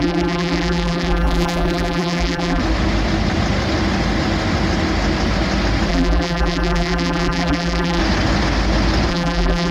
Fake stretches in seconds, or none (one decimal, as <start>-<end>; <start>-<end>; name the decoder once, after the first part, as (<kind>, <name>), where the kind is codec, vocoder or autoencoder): 0.0-2.6 (vocoder, BigVGAN v2); 5.9-8.0; 9.1-9.7